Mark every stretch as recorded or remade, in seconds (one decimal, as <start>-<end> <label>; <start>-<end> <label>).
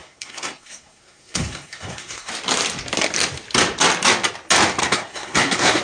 0.0-2.3 remade; 2.3-4.8 recorded; 4.8-5.8 remade